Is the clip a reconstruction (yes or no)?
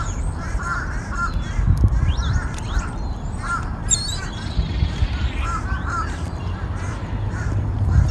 yes